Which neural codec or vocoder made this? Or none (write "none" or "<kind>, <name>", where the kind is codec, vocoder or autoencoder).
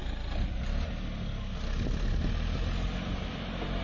none